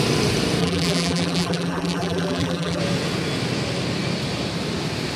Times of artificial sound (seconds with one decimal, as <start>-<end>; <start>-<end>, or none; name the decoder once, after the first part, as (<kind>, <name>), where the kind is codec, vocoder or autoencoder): 0.6-2.8 (vocoder, BigVGAN v2)